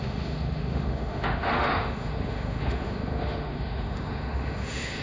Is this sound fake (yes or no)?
yes